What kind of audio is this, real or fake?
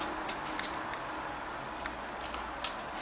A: real